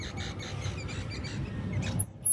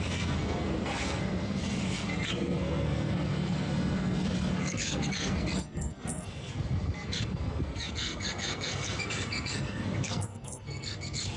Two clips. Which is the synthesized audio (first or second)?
second